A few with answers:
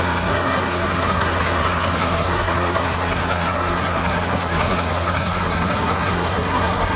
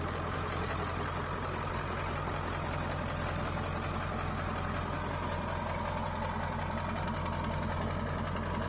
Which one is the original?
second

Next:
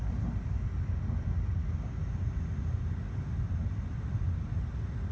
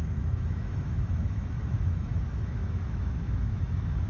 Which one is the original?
first